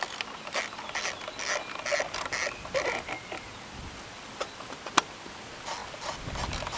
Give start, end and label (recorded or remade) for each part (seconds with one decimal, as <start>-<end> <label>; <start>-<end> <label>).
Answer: 0.0-5.8 recorded; 5.8-6.8 remade